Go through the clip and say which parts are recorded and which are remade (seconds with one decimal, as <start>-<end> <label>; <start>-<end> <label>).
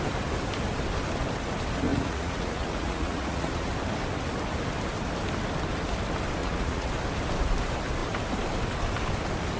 0.0-1.9 recorded; 1.9-3.7 remade; 3.7-6.4 recorded; 6.4-6.9 remade; 6.9-9.6 recorded